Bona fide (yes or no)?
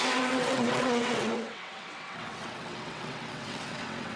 no